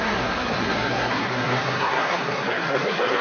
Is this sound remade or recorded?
remade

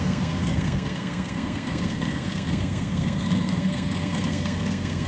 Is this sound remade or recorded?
remade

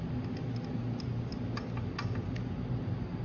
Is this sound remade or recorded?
recorded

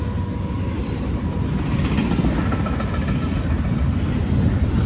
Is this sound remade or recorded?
recorded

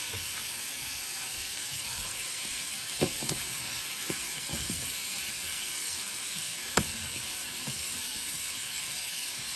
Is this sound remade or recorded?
remade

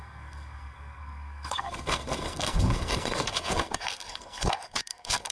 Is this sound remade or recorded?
remade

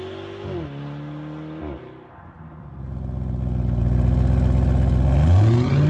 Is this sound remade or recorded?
recorded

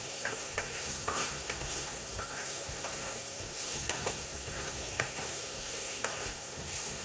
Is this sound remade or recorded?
remade